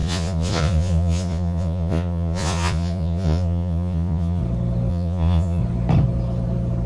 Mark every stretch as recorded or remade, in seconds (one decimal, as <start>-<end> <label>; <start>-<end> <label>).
0.0-4.4 remade; 4.4-4.9 recorded; 4.9-5.6 remade; 5.6-6.9 recorded